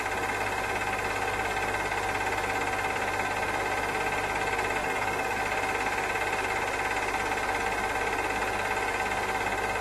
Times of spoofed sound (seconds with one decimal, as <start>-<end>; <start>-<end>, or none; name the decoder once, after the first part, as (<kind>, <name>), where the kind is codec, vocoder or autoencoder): 4.8-5.4 (codec, DAC)